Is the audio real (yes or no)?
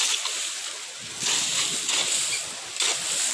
yes